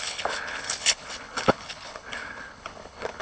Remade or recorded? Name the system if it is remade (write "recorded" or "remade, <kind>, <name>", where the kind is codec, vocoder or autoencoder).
remade, codec, HILCodec